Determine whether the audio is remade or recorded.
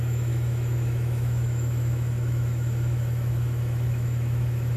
remade